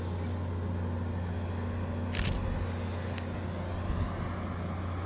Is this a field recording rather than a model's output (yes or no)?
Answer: yes